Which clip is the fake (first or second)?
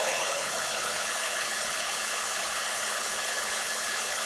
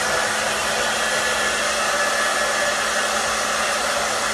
first